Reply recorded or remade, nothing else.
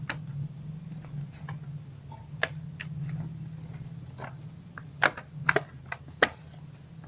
recorded